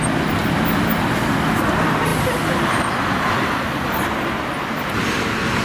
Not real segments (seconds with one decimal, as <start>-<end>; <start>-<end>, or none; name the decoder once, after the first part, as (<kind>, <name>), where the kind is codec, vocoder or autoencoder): none